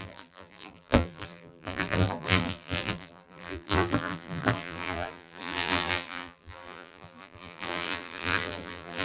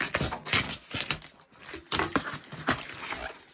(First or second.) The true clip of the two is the second